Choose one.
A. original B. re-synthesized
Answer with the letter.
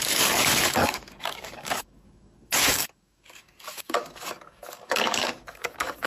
B